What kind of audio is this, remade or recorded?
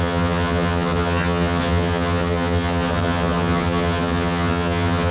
remade